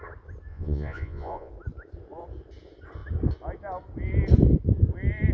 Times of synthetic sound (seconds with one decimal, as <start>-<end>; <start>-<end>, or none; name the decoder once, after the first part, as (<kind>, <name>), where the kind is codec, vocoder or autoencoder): 0.5-1.5 (vocoder, Vocos)